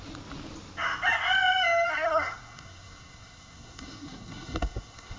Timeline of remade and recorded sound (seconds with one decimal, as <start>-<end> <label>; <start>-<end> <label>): 0.0-1.9 recorded; 1.9-5.2 remade